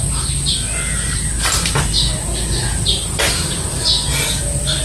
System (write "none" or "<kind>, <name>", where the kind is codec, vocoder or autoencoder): none